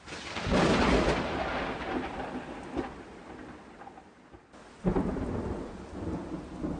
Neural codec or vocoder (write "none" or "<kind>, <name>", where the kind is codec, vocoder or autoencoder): none